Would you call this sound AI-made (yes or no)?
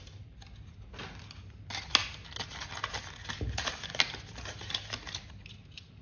no